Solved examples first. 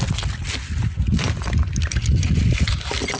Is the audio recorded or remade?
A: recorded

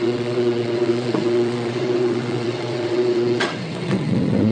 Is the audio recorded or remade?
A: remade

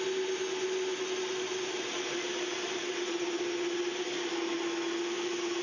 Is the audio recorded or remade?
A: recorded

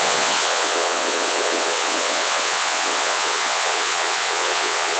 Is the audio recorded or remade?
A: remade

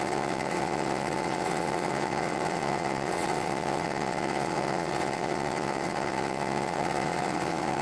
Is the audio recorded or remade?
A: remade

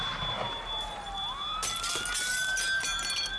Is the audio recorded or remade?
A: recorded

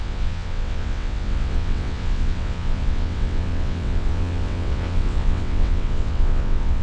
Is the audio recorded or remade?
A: remade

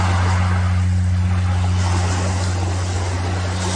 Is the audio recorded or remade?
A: recorded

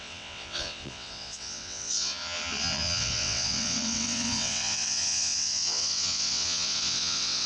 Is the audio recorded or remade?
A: remade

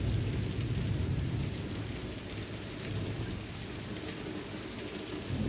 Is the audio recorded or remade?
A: recorded